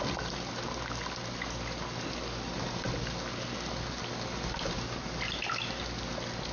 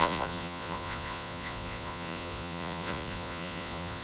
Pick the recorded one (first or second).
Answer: first